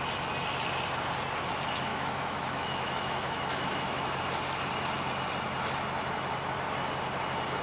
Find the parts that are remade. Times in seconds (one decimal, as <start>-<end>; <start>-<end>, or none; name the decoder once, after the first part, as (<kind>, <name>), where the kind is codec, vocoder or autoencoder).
1.9-4.2 (autoencoder, DAC-VAE)